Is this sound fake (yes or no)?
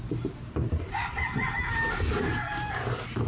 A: no